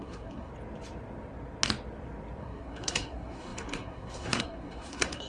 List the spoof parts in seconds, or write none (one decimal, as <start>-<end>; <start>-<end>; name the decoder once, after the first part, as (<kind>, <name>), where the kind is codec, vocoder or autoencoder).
0.0-0.5 (codec, SNAC); 2.4-5.3